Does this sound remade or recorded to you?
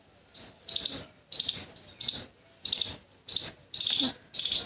recorded